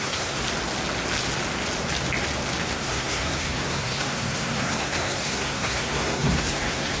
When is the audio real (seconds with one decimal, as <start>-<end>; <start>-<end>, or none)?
0.4-2.7